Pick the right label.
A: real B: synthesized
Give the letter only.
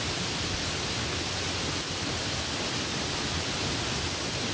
A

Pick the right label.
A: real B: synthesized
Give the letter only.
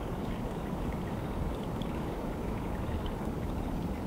B